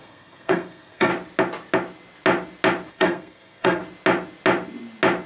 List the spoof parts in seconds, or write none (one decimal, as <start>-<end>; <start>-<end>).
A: 0.0-1.1; 2.9-3.8